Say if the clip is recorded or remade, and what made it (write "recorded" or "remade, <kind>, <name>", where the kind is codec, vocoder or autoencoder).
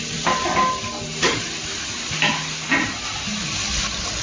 recorded